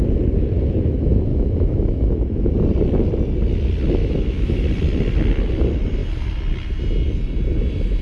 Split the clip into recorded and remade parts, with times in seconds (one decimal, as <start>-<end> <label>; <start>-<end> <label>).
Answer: 0.0-1.3 recorded; 1.3-2.5 remade; 2.5-4.0 recorded; 4.0-4.7 remade; 4.7-8.0 recorded